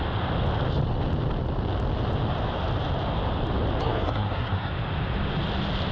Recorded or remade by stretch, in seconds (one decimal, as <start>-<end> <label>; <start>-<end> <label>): 0.0-3.8 recorded; 3.8-4.7 remade; 4.7-5.9 recorded